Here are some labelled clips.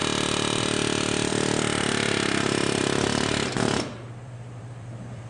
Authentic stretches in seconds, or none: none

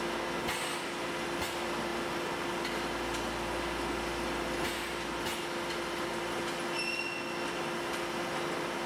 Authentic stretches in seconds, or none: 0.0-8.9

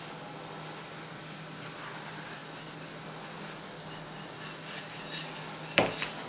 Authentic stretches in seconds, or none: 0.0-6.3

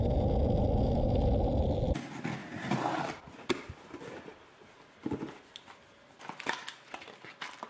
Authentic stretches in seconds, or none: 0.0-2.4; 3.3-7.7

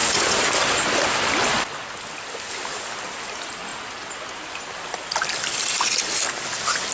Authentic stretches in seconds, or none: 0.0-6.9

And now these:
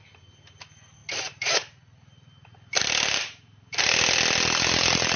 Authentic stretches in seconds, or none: 0.0-1.0; 4.1-5.2